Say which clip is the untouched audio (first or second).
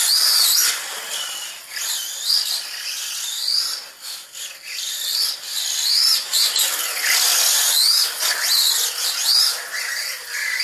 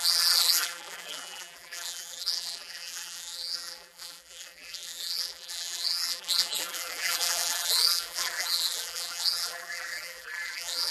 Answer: first